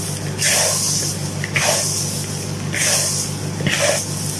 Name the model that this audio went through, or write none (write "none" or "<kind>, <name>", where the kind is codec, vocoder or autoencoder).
none